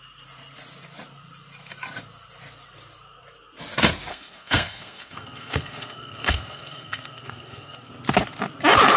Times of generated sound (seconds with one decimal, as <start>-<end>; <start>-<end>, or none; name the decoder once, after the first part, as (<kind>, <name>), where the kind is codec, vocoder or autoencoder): 4.1-7.9 (codec, SNAC)